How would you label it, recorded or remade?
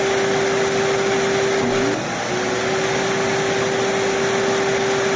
recorded